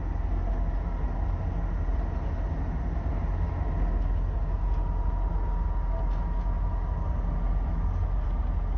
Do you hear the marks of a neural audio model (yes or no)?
no